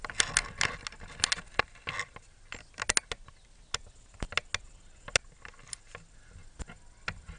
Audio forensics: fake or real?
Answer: real